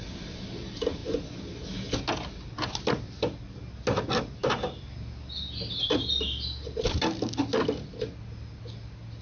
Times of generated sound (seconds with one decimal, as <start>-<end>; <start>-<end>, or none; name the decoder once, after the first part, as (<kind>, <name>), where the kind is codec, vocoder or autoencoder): none